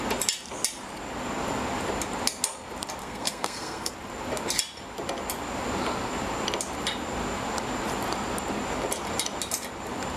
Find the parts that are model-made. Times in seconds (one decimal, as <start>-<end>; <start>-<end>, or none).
3.0-3.9